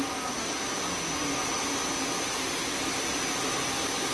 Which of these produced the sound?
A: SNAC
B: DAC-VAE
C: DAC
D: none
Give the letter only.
D